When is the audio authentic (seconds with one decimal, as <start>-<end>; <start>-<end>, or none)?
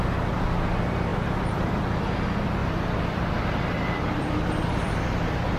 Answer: 0.0-1.1; 1.8-2.6